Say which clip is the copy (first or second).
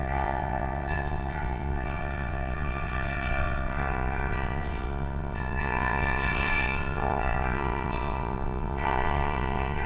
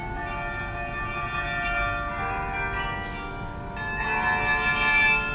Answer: first